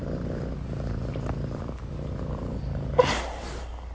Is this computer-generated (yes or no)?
yes